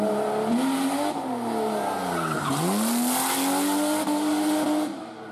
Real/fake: real